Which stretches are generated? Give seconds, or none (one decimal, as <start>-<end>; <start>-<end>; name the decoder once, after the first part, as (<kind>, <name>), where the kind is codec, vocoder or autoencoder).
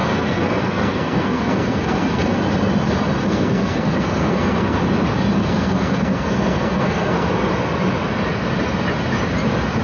0.0-2.4 (codec, SNAC); 3.2-4.8; 5.4-7.3